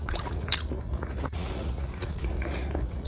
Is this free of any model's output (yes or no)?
no